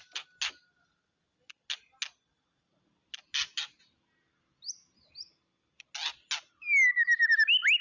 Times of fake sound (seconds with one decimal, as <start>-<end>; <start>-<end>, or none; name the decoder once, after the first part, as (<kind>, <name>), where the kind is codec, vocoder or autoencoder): none